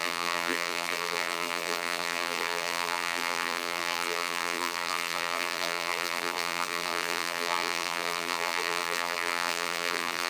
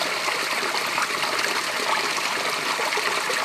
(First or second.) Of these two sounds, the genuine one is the second